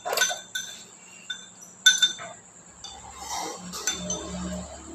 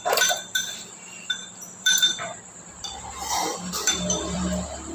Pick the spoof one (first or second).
second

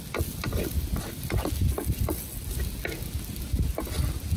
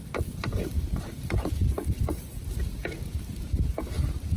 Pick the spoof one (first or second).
second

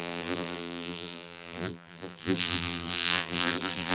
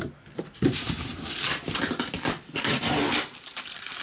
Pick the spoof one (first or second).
first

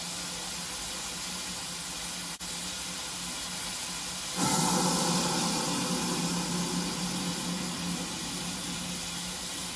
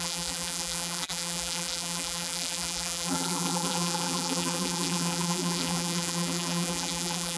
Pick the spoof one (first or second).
second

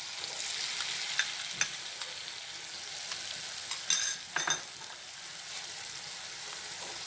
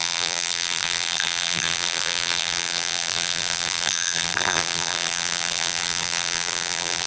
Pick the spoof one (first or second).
second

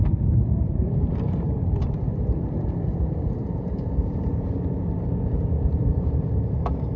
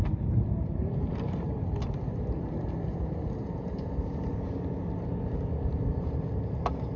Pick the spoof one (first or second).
first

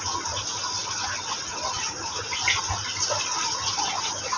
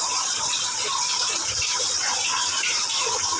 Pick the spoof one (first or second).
second